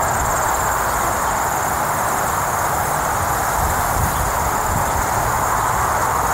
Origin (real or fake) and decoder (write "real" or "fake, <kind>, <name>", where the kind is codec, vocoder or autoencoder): real